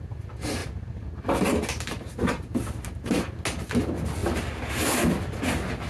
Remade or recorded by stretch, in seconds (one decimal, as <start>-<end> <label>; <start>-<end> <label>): 0.0-5.9 recorded